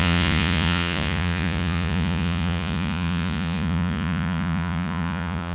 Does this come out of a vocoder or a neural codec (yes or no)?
yes